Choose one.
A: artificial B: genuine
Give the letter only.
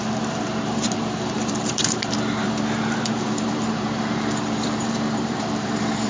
A